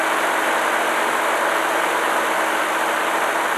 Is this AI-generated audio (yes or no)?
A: no